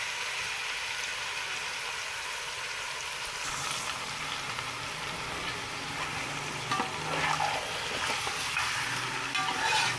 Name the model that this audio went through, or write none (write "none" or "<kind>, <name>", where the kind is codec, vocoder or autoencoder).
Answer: none